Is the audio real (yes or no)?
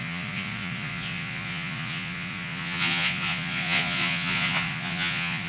no